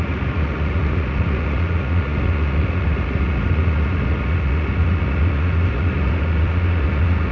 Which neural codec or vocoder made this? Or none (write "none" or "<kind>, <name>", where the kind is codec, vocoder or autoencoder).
vocoder, Vocos